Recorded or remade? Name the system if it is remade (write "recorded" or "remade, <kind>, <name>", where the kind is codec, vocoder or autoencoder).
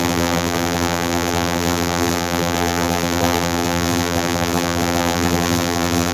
remade, vocoder, BigVGAN v2